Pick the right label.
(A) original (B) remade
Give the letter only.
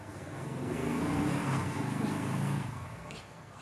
B